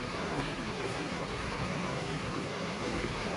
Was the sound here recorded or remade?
remade